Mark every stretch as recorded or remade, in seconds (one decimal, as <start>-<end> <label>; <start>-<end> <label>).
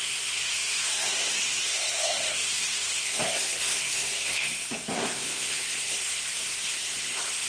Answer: 0.0-7.5 remade